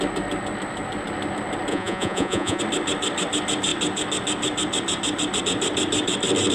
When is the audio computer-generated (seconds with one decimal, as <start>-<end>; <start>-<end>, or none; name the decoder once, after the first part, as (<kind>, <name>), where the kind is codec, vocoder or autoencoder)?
1.7-2.6 (vocoder, Vocos)